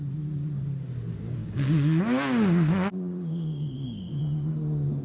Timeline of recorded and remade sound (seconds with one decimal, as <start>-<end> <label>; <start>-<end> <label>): 0.0-1.4 recorded; 1.4-4.2 remade; 4.2-5.0 recorded